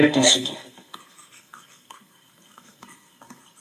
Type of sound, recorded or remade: remade